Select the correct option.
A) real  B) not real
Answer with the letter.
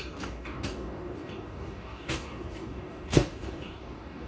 B